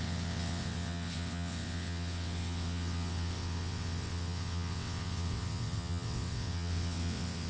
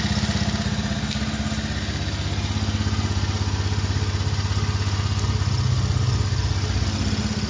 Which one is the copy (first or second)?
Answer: first